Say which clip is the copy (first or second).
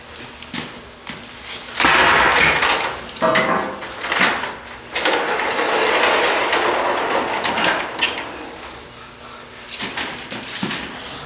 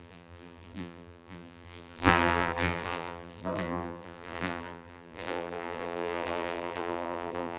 second